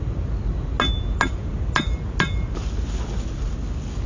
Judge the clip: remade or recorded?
recorded